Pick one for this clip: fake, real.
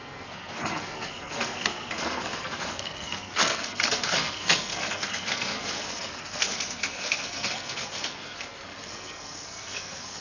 fake